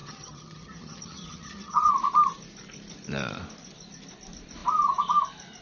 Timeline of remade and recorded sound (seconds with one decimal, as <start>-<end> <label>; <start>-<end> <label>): 0.0-1.9 remade; 1.9-5.6 recorded